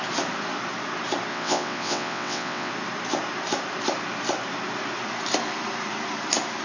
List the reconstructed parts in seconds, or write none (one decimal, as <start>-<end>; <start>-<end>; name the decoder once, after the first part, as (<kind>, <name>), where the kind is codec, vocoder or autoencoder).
1.3-2.7 (vocoder, WaveNeXt)